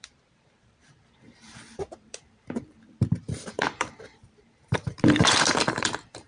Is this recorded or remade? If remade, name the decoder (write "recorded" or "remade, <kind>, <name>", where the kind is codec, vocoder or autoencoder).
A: remade, vocoder, BigVGAN v2